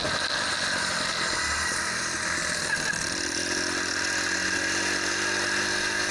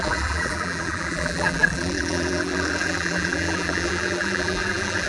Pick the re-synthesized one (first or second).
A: second